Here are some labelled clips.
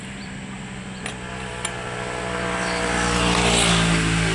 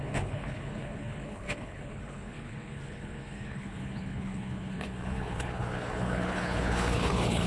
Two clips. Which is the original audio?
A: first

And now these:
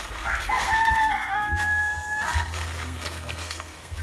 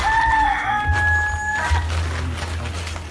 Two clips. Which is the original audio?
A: second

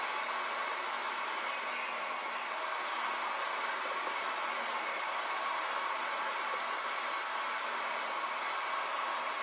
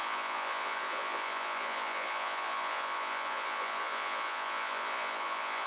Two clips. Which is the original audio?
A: first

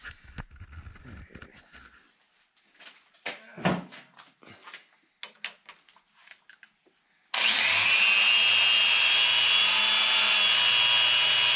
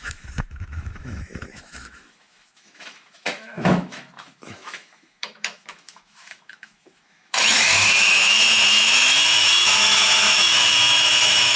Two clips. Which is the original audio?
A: first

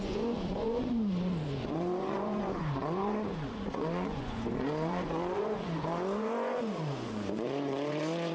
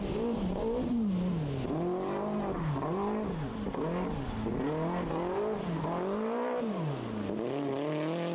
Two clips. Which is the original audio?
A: second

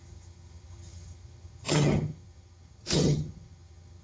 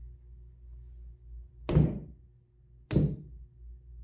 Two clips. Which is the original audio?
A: second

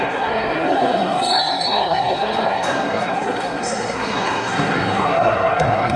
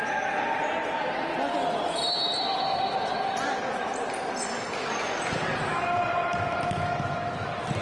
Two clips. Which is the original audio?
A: second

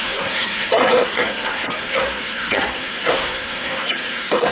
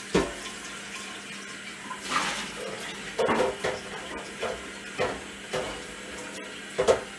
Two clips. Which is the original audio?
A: second